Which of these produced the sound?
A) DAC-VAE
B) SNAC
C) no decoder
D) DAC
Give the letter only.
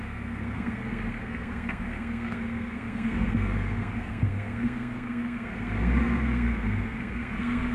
B